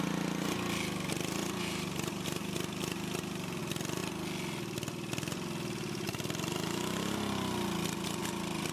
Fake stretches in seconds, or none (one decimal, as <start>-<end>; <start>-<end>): 1.4-3.6